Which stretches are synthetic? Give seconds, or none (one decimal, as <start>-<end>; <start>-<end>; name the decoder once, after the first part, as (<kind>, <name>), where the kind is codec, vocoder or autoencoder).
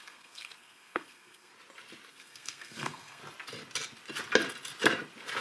0.0-1.5 (codec, SNAC); 2.1-3.2